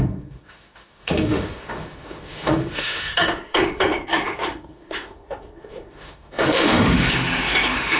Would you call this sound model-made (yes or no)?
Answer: yes